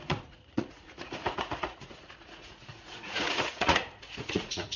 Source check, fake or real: fake